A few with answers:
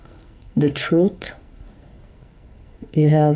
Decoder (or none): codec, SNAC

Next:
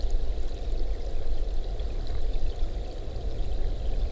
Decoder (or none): none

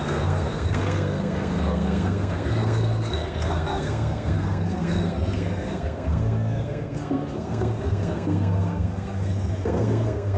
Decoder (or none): codec, SNAC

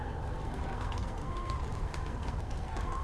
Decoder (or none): codec, SNAC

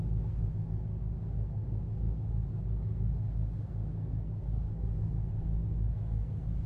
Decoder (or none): codec, SNAC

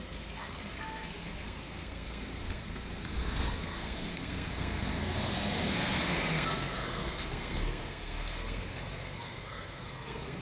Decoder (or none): codec, SNAC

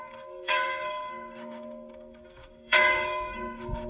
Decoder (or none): codec, SNAC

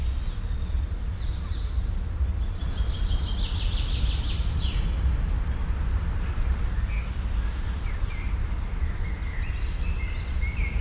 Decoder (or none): none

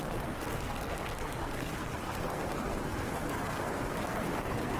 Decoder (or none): codec, SNAC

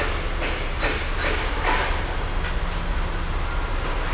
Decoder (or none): none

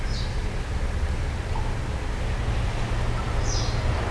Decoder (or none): none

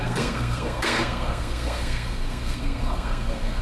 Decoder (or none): codec, SNAC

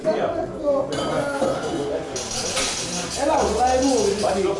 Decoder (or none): none